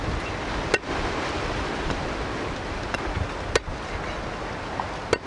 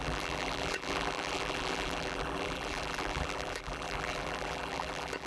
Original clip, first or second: first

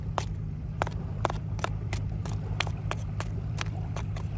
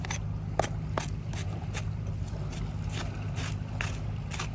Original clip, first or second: second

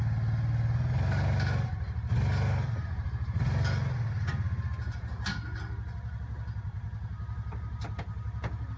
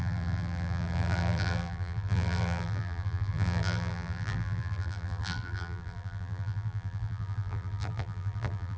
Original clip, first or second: first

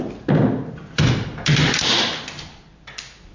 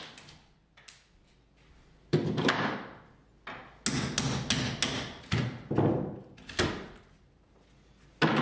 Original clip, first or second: second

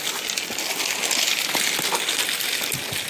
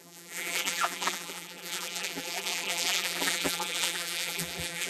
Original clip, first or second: first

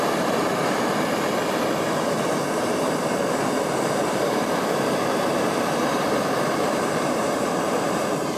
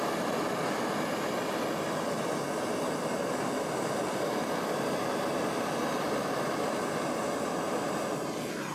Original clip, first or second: second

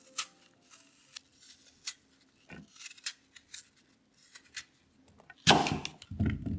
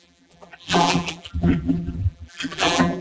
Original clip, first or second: first